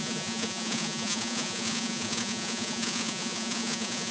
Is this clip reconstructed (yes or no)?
yes